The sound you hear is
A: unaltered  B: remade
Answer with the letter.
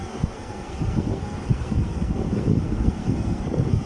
B